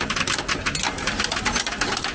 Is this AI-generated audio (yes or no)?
no